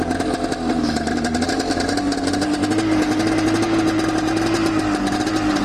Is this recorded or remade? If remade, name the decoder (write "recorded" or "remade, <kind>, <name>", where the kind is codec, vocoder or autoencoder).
recorded